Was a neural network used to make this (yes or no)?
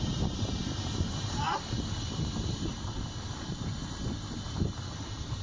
yes